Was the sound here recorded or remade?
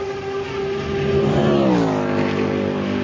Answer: recorded